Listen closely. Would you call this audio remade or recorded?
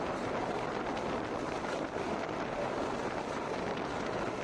recorded